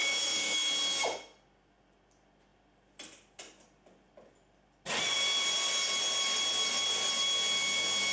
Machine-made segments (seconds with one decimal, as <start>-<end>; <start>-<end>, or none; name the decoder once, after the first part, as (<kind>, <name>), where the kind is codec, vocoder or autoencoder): 0.0-0.7 (autoencoder, DAC-VAE)